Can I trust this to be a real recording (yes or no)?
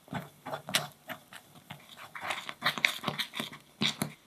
yes